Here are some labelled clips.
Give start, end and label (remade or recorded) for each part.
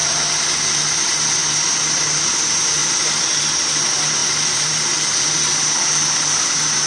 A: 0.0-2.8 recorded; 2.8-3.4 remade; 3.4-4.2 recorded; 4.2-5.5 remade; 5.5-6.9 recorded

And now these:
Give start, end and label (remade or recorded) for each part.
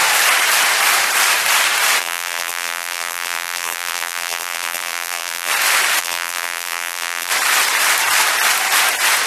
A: 0.0-2.0 recorded; 2.0-5.5 remade; 5.5-6.0 recorded; 6.0-7.3 remade; 7.3-9.3 recorded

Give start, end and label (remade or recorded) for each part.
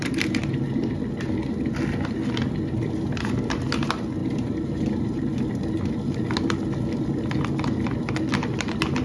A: 0.0-0.8 remade; 0.8-4.2 recorded; 4.2-5.4 remade; 5.4-9.0 recorded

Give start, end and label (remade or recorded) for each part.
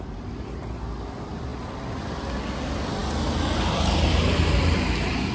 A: 0.0-5.3 recorded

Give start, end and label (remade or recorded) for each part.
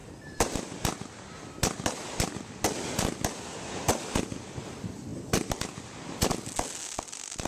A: 0.0-7.5 recorded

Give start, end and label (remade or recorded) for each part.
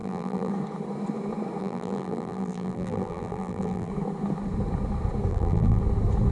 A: 0.0-0.5 remade; 0.5-1.6 recorded; 1.6-3.9 remade; 3.9-5.3 recorded; 5.3-5.8 remade; 5.8-6.3 recorded